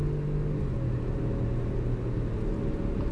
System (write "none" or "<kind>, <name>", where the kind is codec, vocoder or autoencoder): none